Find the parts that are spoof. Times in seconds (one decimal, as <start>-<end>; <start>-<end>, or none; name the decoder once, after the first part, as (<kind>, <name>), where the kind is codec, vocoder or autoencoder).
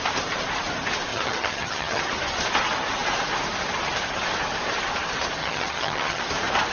1.1-2.0 (vocoder, HiFi-GAN); 5.4-6.2